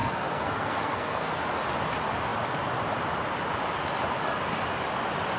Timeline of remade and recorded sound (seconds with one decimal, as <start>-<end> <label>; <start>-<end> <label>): 0.0-1.3 remade; 1.3-5.4 recorded